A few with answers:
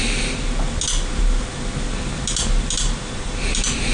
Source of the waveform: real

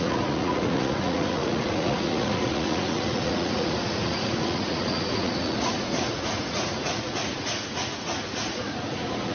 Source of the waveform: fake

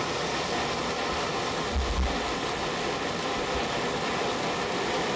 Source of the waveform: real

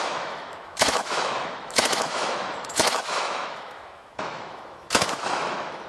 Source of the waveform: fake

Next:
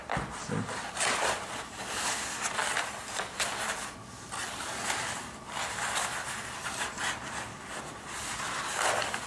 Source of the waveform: real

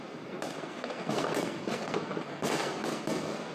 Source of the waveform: fake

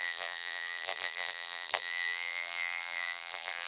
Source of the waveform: fake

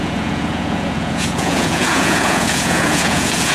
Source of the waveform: fake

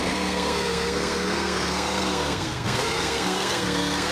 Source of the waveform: fake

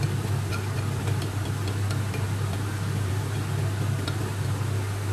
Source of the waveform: real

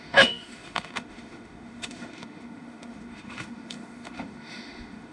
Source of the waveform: fake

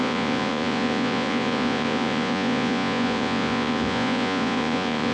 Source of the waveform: fake